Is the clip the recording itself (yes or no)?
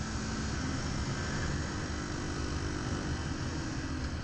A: yes